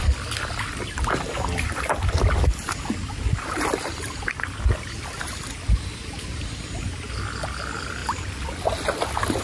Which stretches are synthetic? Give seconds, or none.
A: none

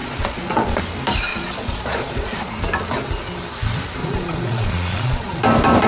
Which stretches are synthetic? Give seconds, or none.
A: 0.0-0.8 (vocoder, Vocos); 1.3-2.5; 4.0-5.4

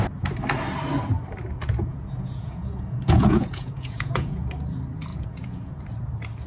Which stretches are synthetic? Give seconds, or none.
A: 1.9-4.5 (vocoder, Vocos); 5.1-5.7

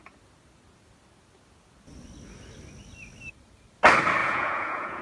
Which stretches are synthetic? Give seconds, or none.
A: 4.2-5.0 (vocoder, Vocos)

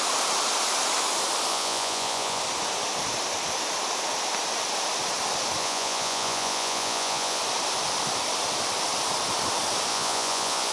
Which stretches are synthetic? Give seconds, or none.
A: 1.5-2.4 (vocoder, Vocos); 5.6-7.4; 9.9-10.7